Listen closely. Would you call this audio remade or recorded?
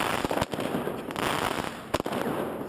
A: recorded